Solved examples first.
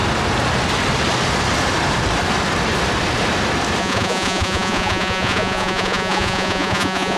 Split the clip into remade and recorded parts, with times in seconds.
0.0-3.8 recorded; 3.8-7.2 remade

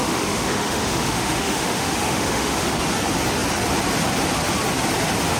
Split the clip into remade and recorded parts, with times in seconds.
0.0-2.8 remade; 2.8-5.4 recorded

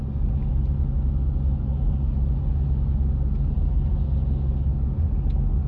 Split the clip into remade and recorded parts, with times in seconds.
0.0-5.7 recorded